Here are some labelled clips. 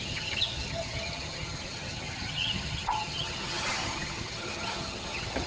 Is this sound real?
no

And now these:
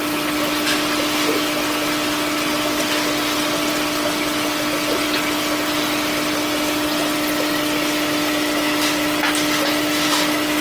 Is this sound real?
yes